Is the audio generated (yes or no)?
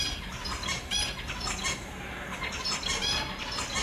no